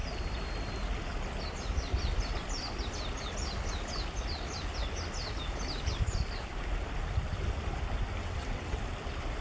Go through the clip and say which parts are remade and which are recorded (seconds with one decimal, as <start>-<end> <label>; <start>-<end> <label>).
0.0-8.2 recorded; 8.2-8.8 remade; 8.8-9.4 recorded